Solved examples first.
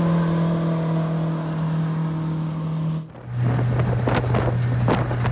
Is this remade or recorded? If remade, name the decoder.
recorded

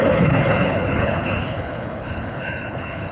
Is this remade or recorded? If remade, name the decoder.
remade, codec, HILCodec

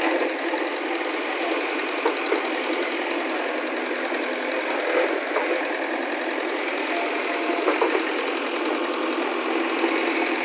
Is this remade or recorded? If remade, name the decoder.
recorded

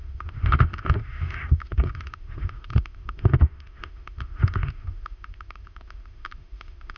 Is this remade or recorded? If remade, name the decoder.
remade, autoencoder, DAC-VAE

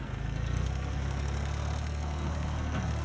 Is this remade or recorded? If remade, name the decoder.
remade, codec, SNAC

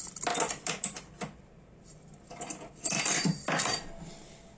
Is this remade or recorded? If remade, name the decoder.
recorded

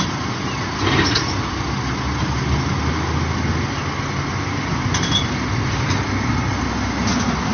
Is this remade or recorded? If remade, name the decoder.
recorded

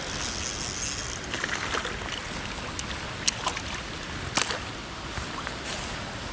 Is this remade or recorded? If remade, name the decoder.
recorded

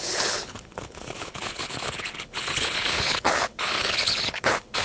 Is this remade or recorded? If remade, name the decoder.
remade, codec, HILCodec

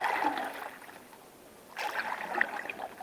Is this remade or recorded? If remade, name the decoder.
recorded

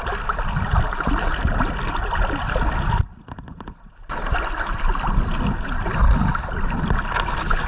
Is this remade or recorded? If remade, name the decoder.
recorded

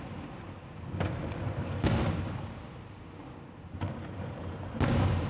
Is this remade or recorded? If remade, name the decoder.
recorded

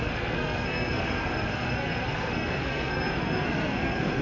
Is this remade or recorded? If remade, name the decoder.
remade, codec, SNAC